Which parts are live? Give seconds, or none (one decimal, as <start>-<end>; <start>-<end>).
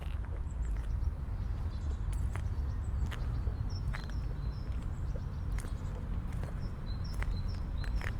1.8-3.5; 5.8-8.2